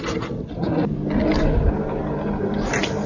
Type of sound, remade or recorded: recorded